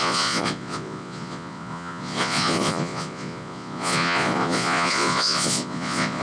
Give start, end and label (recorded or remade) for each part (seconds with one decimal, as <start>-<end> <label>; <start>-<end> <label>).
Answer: 0.0-6.2 remade